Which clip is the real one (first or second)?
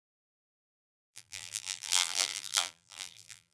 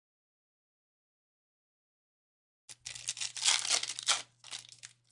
second